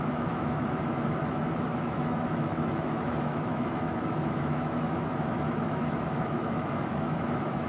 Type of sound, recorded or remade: remade